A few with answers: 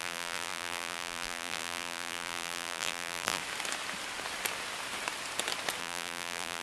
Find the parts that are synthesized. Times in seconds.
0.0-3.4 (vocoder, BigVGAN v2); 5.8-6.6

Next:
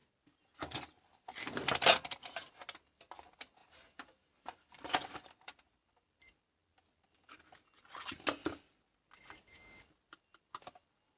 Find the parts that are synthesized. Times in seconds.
3.6-5.5 (vocoder, BigVGAN v2)

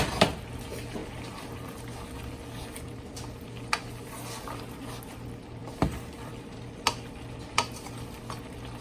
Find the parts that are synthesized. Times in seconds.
5.6-6.6 (vocoder, BigVGAN v2)

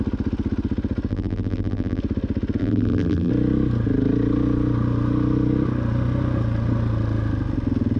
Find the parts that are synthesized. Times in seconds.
1.1-2.0 (vocoder, BigVGAN v2); 2.6-3.3

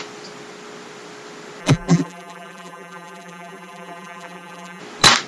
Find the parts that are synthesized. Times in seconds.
1.6-4.8 (vocoder, BigVGAN v2)

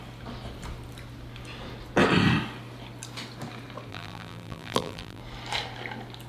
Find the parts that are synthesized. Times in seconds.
3.9-5.2 (vocoder, BigVGAN v2)

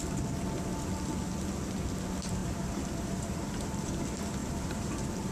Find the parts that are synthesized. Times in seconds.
2.4-3.8 (vocoder, BigVGAN v2); 4.4-5.3

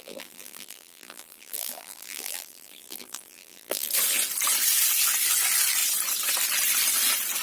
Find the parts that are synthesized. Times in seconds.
0.0-3.9 (vocoder, BigVGAN v2)